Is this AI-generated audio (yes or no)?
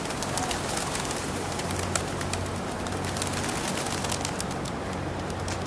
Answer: no